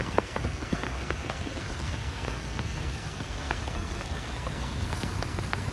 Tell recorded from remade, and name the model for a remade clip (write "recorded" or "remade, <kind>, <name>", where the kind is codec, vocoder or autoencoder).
remade, codec, SNAC